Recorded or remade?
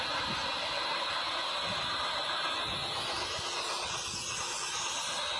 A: recorded